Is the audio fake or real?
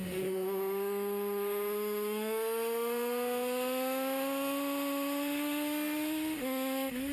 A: fake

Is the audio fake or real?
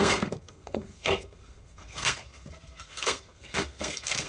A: fake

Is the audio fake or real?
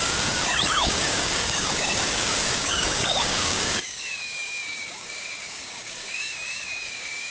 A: fake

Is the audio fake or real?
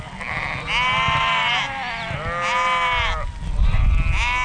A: real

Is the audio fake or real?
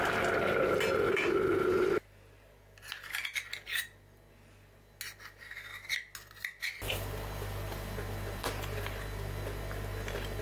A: real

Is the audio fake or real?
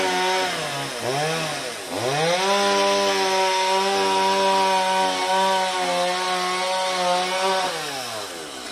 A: real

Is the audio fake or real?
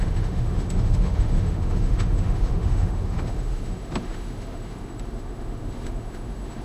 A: fake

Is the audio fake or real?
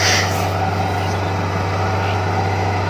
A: real